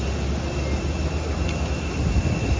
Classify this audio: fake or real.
real